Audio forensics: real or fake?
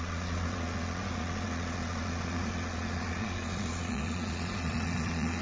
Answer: fake